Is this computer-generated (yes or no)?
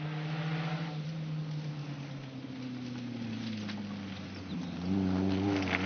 no